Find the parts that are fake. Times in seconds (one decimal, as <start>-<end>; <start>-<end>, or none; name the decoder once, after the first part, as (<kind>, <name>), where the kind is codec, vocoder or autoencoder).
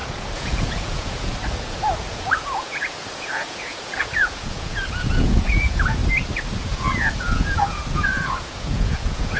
0.0-6.0 (vocoder, Vocos); 6.5-9.4